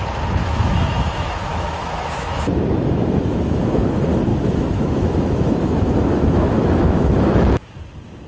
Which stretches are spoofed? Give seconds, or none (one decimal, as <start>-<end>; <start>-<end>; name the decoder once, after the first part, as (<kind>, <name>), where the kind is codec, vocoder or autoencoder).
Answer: 0.4-3.9 (autoencoder, DAC-VAE); 4.3-7.8